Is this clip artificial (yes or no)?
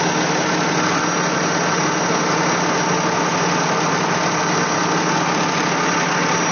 no